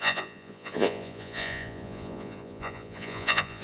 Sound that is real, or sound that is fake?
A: fake